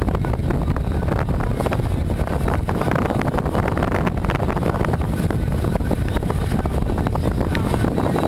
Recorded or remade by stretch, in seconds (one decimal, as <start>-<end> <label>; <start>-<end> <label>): 0.0-8.3 recorded